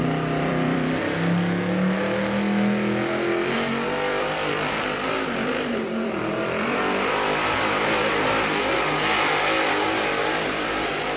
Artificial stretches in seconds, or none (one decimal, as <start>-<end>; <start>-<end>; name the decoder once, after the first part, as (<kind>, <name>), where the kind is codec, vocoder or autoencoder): 0.0-1.0 (vocoder, BigVGAN v2); 3.0-8.1; 10.1-11.2